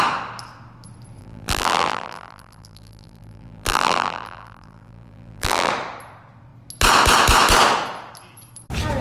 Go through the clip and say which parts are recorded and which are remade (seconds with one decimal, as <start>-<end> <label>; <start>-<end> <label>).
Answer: 0.0-1.2 recorded; 1.2-5.7 remade; 5.7-9.0 recorded